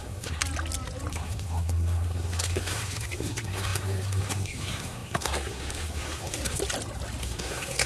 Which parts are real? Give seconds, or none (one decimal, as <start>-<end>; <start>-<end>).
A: 0.4-1.1; 6.6-7.2